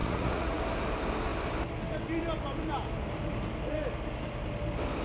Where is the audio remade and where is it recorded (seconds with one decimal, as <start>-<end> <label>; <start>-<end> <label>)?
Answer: 0.0-0.6 remade; 0.6-5.0 recorded

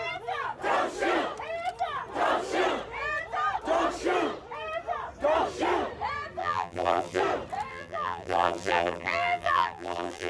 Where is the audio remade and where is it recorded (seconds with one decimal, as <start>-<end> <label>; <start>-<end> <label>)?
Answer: 0.0-6.4 recorded; 6.4-7.2 remade; 7.2-7.7 recorded; 7.7-10.3 remade

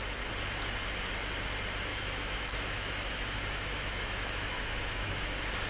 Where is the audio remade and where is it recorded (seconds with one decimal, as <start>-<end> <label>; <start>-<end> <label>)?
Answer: 0.0-1.9 recorded; 1.9-5.3 remade; 5.3-5.7 recorded

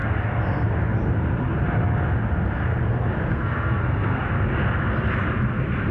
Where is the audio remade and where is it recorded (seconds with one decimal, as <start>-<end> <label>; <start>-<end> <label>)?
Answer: 0.0-3.3 recorded; 3.3-4.2 remade; 4.2-5.9 recorded

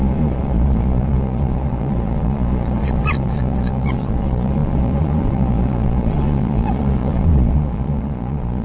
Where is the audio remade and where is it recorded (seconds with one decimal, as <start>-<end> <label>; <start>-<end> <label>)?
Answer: 0.0-8.6 remade

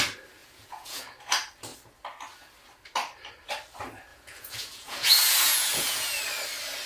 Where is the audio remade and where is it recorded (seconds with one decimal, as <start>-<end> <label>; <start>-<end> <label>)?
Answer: 0.0-0.4 recorded; 0.4-1.0 remade; 1.0-4.1 recorded; 4.1-6.2 remade; 6.2-6.9 recorded

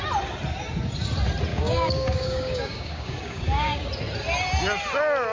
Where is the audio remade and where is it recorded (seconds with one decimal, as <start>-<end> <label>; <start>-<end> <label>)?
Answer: 0.0-1.5 recorded; 1.5-3.8 remade; 3.8-5.3 recorded

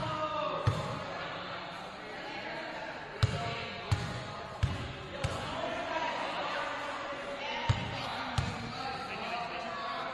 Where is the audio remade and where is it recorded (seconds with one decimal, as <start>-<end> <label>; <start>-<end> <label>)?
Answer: 0.0-3.6 recorded; 3.6-7.4 remade; 7.4-10.1 recorded